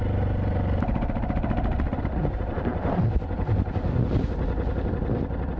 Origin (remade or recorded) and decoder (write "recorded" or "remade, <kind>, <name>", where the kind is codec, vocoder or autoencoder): recorded